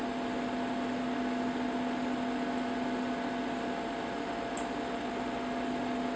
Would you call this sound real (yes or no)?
yes